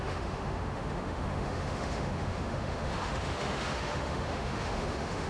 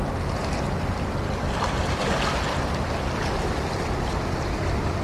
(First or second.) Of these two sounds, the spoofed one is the first